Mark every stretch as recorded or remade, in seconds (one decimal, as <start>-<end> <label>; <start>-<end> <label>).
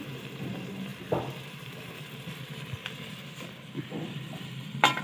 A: 0.0-0.9 remade; 0.9-3.9 recorded; 3.9-5.0 remade